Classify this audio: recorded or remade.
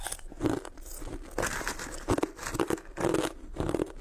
recorded